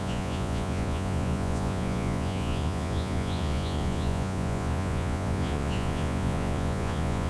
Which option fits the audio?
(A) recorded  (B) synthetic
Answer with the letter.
B